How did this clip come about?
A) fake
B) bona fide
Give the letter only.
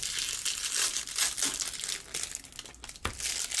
B